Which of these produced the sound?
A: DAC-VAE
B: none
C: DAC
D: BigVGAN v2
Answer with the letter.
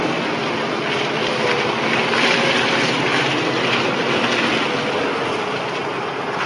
B